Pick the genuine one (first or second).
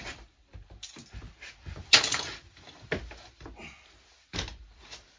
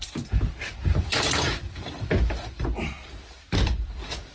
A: first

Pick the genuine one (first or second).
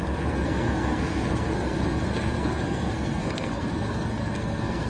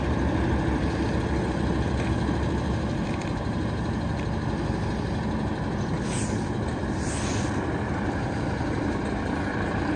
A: second